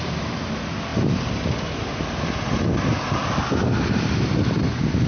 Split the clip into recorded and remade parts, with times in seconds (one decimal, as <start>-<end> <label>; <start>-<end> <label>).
0.0-5.1 recorded